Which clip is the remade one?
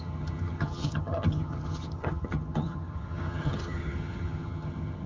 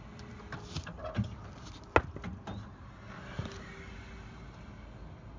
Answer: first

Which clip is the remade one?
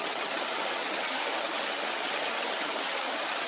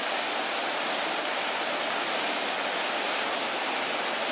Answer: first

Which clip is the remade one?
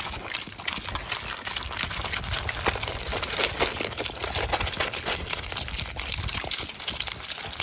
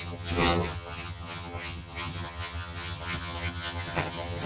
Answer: second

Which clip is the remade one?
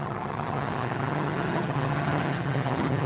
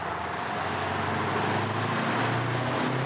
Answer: first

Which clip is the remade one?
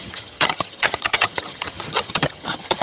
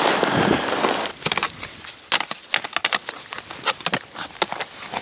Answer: first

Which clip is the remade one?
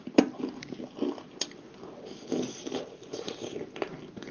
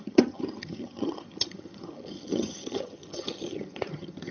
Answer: second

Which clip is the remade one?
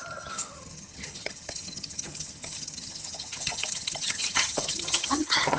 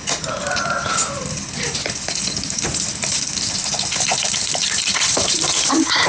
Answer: first